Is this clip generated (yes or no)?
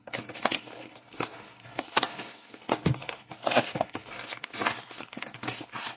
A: yes